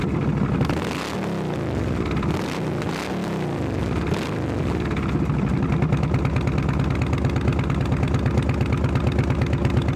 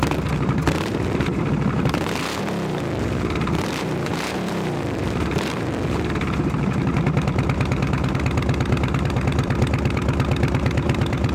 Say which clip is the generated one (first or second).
second